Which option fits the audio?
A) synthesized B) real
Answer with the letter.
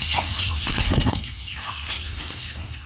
A